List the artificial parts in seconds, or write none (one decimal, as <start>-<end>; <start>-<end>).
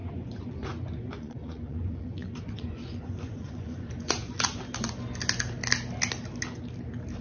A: 0.0-4.3